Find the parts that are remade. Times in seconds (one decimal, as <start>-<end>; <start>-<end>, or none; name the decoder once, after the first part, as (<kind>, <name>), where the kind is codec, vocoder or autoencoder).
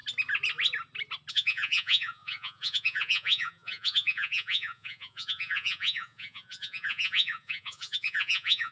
1.3-8.7 (vocoder, Vocos)